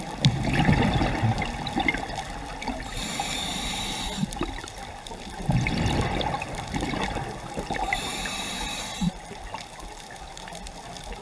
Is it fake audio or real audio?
real